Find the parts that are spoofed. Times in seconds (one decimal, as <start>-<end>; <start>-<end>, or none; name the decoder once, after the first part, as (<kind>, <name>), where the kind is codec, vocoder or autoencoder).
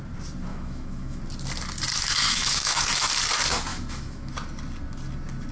0.5-1.2 (autoencoder, DAC-VAE); 1.9-2.8; 3.7-4.3